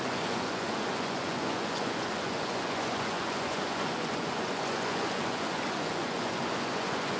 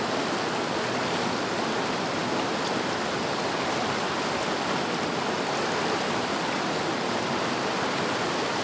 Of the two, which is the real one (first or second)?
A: second